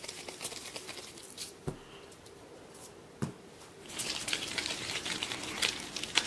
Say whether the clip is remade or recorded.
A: remade